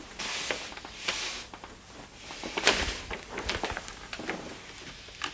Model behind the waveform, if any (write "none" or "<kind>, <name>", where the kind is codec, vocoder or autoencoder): none